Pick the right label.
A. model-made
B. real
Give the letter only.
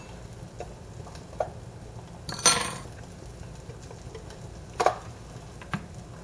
B